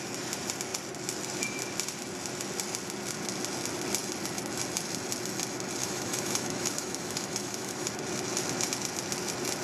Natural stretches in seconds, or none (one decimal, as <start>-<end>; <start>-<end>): 0.0-5.8; 7.9-9.6